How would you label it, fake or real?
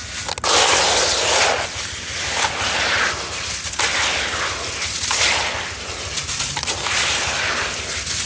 real